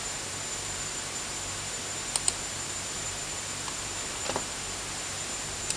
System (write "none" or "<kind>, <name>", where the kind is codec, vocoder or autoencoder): vocoder, BigVGAN v2